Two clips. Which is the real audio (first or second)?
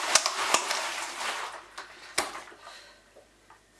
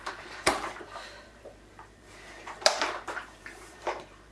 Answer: first